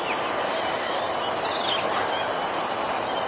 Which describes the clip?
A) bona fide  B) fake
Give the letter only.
A